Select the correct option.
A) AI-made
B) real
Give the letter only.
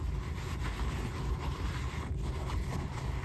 B